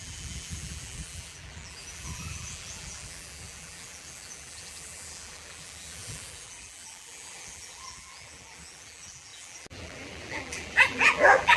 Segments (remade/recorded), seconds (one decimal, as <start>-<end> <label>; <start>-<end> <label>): 0.0-11.6 remade